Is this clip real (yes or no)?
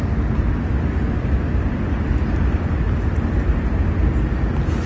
yes